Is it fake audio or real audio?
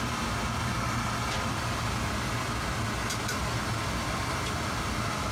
real